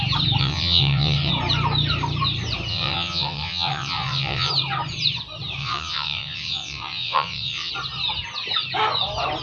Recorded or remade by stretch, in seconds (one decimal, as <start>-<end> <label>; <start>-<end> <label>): 0.0-0.4 recorded; 0.4-1.3 remade; 1.3-2.7 recorded; 2.7-4.5 remade; 4.5-5.6 recorded; 5.6-7.7 remade; 7.7-9.4 recorded